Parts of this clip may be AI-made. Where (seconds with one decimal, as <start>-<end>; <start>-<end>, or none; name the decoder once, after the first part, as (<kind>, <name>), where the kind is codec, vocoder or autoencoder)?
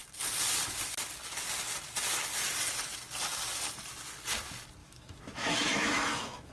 4.8-6.5 (autoencoder, DAC-VAE)